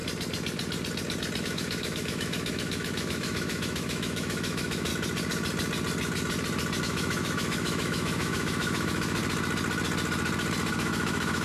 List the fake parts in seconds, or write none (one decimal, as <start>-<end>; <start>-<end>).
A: 1.4-4.9; 6.8-9.2; 10.7-11.4